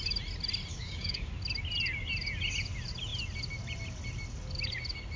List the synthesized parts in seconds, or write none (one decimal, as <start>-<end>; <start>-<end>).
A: 0.7-1.3